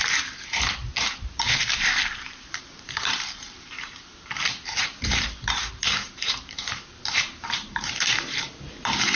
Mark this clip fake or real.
fake